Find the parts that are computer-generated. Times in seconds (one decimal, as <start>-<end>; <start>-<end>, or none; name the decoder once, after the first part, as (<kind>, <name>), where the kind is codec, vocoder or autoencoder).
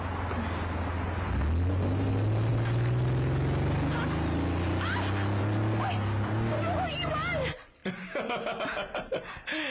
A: none